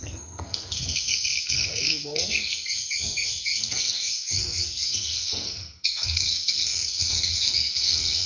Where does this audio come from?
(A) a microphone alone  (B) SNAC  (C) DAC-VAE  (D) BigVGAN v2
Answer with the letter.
B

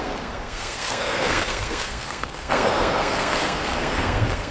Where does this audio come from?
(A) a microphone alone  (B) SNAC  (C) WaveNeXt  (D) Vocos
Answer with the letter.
B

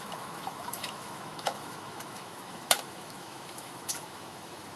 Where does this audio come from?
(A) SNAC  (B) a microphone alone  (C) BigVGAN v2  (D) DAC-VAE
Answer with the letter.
D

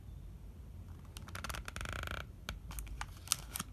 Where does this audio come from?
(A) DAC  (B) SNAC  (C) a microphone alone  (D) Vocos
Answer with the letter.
C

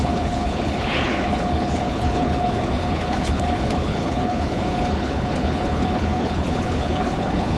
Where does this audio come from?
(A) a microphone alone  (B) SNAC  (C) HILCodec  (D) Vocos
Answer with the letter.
C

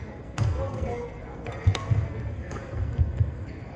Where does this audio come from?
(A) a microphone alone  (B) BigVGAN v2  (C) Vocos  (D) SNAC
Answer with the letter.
D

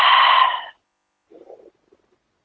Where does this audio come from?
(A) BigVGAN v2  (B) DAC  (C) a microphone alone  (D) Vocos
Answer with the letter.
C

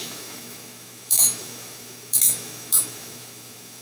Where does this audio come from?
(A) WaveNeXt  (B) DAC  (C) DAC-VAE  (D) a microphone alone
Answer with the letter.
C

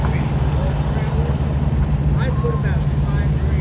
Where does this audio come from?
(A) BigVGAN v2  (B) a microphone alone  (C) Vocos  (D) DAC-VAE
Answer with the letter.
B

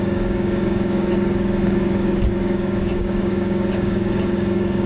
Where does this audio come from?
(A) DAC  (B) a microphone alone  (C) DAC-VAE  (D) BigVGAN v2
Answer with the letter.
A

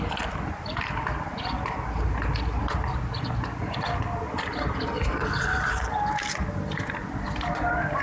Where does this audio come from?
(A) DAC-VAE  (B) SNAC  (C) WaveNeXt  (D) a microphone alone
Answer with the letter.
D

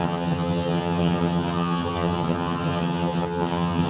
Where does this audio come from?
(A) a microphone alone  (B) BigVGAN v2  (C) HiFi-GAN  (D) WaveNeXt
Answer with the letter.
C